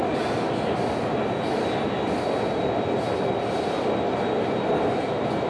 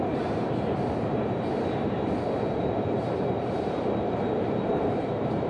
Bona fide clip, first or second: first